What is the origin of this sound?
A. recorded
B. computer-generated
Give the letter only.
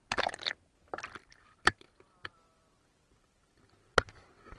A